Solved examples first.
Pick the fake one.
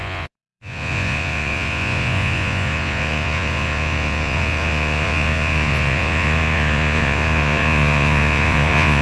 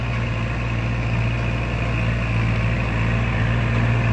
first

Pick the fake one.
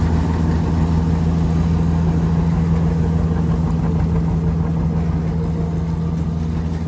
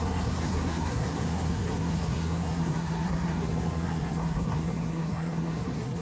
second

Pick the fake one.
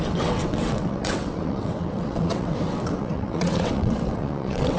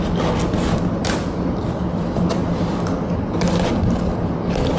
first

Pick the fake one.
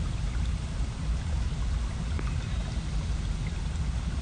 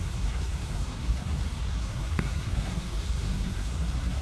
second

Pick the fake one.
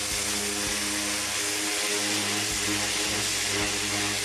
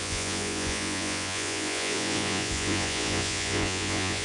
second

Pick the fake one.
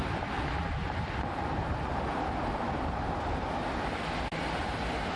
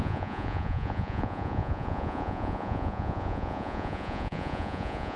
second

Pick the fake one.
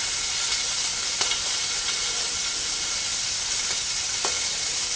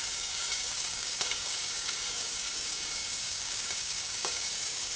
second